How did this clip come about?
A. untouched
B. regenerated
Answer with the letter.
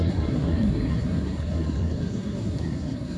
B